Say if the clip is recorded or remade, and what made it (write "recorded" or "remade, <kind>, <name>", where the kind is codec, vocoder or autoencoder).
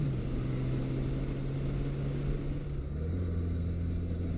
recorded